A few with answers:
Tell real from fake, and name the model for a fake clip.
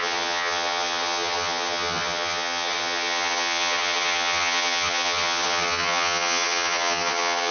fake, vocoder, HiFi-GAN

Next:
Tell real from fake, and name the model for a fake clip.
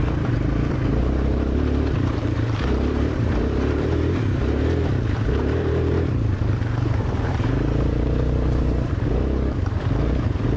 fake, vocoder, BigVGAN v2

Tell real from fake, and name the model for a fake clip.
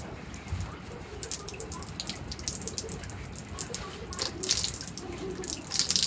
real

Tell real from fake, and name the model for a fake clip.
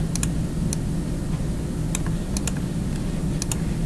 real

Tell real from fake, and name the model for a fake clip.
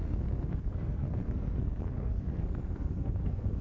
fake, codec, SNAC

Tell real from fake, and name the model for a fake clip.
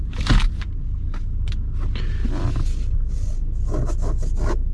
real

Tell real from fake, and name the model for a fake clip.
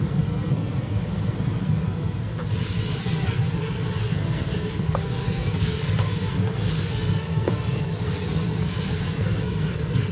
fake, codec, SNAC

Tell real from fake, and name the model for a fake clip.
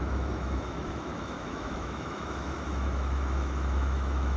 fake, autoencoder, DAC-VAE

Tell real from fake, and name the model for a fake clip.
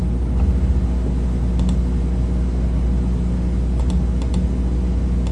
real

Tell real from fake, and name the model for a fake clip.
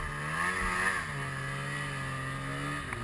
real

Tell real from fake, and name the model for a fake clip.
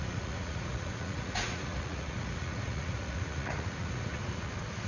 fake, vocoder, Vocos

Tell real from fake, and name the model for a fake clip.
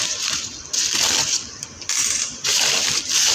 fake, vocoder, BigVGAN v2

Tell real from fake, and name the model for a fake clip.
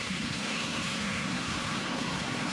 fake, codec, SNAC